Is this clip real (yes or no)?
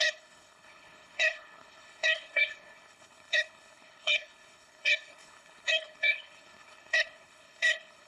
no